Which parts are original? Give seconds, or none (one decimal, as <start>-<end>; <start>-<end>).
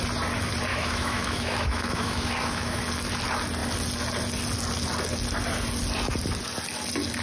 0.0-0.7; 2.8-7.2